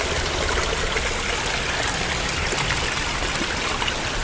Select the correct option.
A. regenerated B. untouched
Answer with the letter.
B